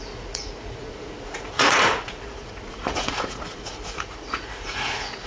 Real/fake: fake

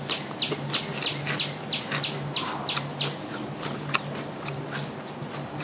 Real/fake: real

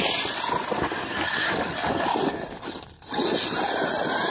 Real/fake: real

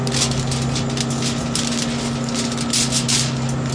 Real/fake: real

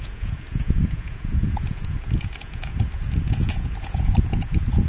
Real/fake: fake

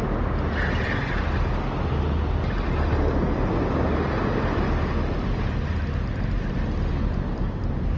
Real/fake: real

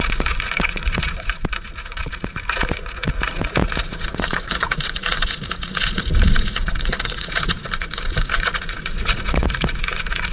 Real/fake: fake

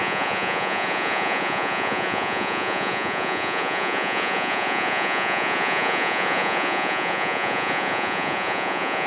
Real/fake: fake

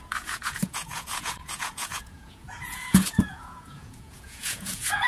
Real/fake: fake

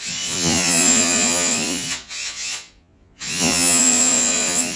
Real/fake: fake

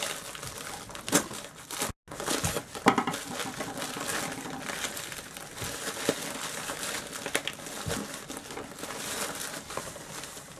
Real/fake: real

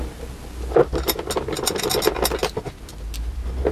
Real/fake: real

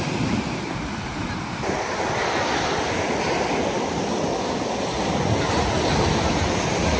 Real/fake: real